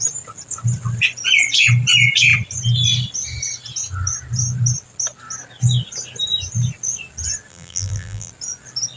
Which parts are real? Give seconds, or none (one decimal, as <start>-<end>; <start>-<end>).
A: 0.0-7.5; 8.3-9.0